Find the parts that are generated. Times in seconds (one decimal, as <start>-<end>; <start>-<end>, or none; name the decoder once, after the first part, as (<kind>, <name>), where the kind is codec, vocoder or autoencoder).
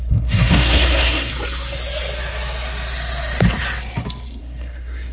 0.0-1.3 (codec, SNAC); 4.4-5.1